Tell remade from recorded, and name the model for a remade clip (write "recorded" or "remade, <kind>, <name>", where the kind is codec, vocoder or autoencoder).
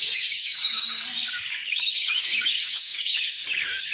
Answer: remade, codec, DAC